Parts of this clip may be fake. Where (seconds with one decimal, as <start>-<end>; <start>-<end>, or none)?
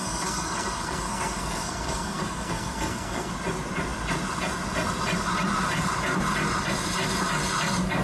0.0-3.3